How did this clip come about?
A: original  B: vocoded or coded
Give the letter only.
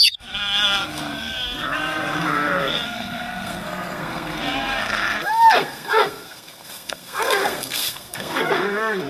B